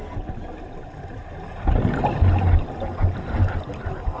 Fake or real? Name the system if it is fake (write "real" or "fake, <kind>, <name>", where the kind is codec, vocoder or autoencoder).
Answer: real